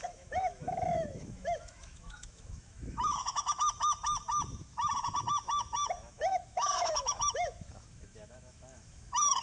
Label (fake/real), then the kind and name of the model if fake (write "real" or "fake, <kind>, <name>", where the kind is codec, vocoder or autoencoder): fake, autoencoder, DAC-VAE